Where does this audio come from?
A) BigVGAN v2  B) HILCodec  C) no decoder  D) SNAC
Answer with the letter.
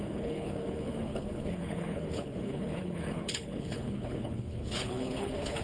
B